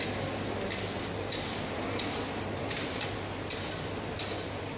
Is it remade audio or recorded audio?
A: recorded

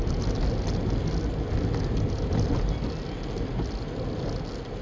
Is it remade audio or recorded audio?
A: recorded